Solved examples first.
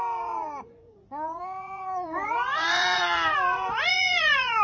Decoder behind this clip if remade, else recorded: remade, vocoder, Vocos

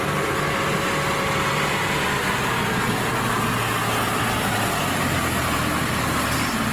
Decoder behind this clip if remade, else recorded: recorded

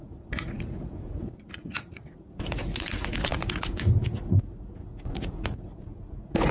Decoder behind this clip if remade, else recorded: remade, vocoder, Vocos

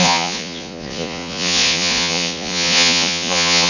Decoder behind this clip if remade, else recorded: remade, vocoder, Vocos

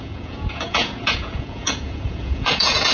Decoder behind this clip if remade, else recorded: remade, vocoder, Vocos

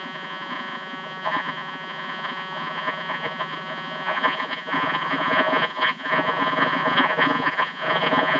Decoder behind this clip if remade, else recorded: remade, vocoder, Vocos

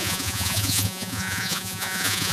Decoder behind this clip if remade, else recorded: remade, vocoder, Vocos